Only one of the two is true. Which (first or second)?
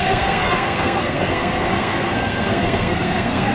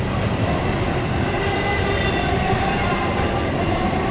second